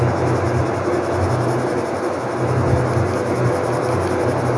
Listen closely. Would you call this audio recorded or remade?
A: recorded